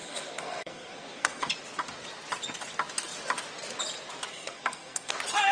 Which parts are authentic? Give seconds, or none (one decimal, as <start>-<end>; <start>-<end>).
1.5-4.3; 5.1-5.5